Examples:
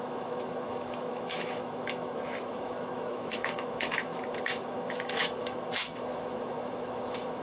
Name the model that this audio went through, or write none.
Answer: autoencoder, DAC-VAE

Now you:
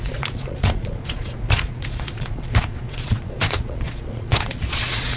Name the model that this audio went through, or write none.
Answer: vocoder, Vocos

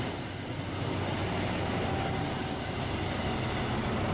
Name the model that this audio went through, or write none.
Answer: none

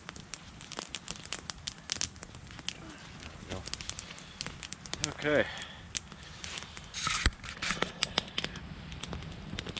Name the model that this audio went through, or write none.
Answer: none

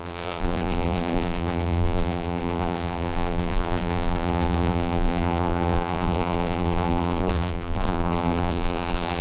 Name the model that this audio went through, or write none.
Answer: vocoder, BigVGAN v2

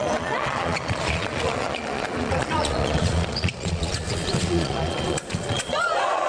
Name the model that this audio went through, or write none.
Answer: vocoder, Vocos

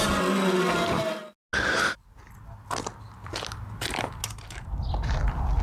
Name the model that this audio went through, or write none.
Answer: none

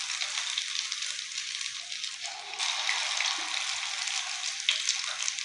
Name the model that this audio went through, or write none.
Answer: none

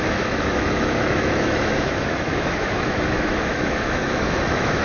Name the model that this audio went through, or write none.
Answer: autoencoder, DAC-VAE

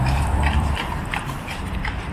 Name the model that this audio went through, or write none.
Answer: vocoder, BigVGAN v2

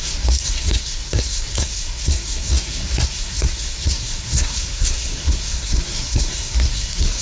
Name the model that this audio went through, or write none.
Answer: codec, SNAC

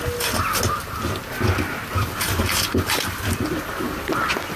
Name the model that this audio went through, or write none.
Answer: none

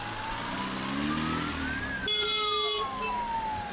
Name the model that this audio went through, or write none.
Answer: none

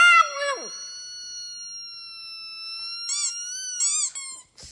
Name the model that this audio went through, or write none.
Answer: none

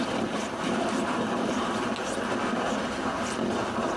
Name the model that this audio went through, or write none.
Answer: none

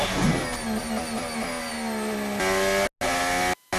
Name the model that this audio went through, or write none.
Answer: none